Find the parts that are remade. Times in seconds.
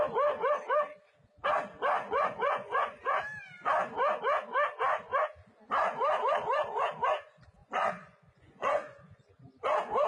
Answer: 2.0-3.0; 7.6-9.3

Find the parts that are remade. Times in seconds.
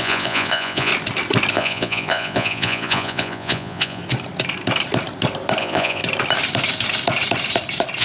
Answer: 0.0-0.9; 1.5-4.0; 5.6-6.0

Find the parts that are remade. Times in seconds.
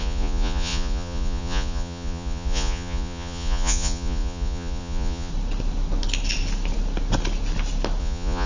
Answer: 0.0-5.3; 8.0-8.5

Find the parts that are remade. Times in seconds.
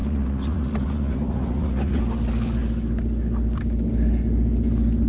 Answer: 0.0-2.0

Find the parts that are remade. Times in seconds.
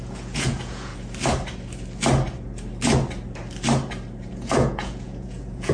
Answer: 0.0-0.9; 4.3-5.7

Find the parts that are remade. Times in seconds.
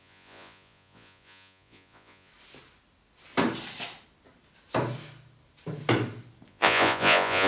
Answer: 0.0-2.3; 6.5-7.5